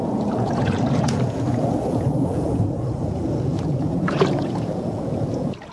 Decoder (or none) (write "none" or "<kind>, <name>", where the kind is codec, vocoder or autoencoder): vocoder, Vocos